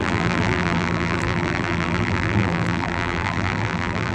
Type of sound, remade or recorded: remade